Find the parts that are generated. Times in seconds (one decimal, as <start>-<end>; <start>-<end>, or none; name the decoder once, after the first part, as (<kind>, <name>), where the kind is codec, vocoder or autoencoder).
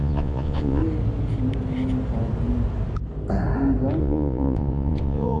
0.0-0.8 (vocoder, Vocos); 4.0-5.4